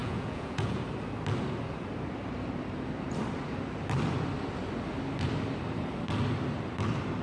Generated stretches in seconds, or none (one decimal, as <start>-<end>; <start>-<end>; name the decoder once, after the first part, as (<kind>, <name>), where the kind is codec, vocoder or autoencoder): 0.0-0.8 (vocoder, Vocos)